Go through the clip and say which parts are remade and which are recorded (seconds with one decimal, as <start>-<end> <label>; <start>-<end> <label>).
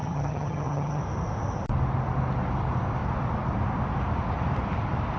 0.0-1.0 remade; 1.0-5.2 recorded